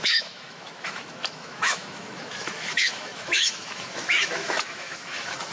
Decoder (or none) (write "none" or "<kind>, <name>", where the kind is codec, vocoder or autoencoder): autoencoder, DAC-VAE